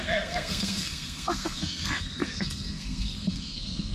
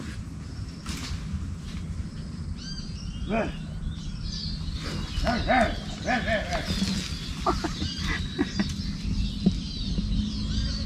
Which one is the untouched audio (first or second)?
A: second